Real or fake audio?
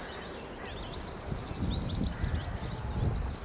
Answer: real